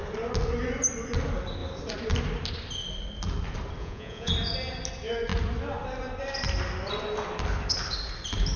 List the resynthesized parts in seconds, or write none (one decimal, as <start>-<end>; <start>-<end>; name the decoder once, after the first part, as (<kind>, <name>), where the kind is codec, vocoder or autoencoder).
3.8-4.3 (vocoder, Vocos)